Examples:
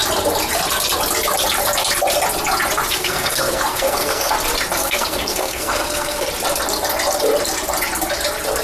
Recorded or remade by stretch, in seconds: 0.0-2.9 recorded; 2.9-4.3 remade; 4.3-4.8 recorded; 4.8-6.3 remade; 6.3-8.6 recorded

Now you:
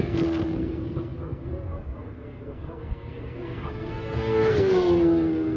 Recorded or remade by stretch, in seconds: 0.0-5.6 remade

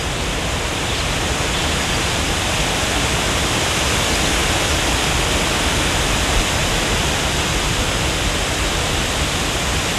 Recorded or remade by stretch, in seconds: 0.0-10.0 recorded

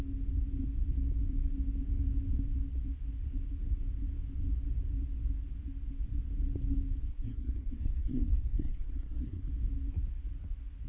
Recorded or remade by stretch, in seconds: 0.0-7.1 recorded; 7.1-9.5 remade; 9.5-10.9 recorded

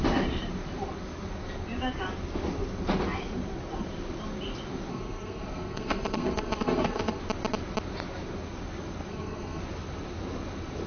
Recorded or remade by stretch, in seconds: 0.0-4.9 recorded; 4.9-7.2 remade; 7.2-9.1 recorded; 9.1-9.6 remade; 9.6-10.9 recorded

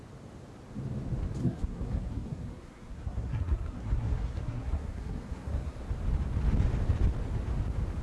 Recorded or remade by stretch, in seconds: 0.0-1.4 recorded; 1.4-5.8 remade; 5.8-8.0 recorded